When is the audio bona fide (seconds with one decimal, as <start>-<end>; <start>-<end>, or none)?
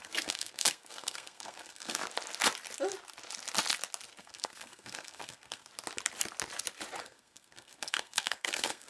2.0-4.2; 5.7-7.0